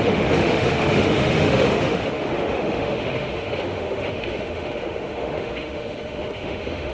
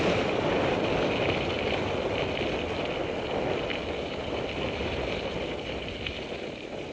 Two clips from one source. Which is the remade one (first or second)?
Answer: first